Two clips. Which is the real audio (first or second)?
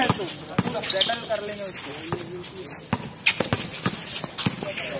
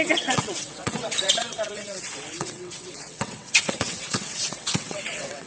first